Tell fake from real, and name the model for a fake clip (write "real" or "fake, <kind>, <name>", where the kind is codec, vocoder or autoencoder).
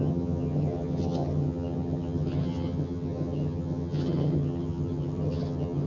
fake, vocoder, HiFi-GAN